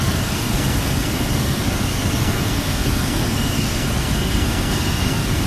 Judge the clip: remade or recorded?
remade